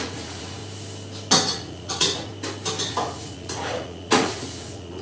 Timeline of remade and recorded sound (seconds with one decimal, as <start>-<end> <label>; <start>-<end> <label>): 0.0-0.6 remade; 0.6-1.5 recorded; 1.5-2.3 remade; 2.3-2.9 recorded; 2.9-5.0 remade